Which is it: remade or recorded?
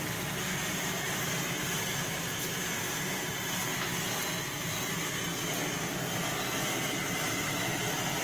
recorded